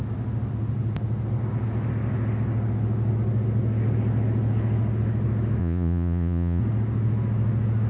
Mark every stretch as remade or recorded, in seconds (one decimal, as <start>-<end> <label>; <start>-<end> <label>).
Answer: 0.0-5.6 recorded; 5.6-6.6 remade; 6.6-7.9 recorded